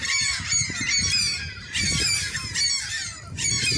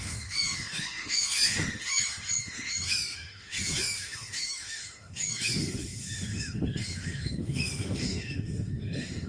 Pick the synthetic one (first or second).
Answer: second